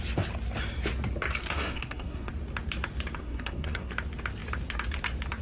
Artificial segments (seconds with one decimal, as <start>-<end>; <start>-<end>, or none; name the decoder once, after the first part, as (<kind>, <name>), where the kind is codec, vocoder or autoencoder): 1.4-2.3 (codec, SNAC); 3.2-3.9